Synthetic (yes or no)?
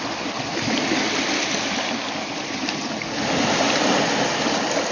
no